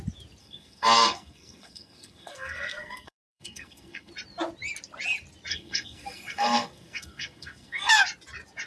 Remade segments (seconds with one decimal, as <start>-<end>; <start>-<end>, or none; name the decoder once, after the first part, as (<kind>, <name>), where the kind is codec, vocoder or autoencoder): 0.4-4.1 (codec, SNAC); 5.5-7.9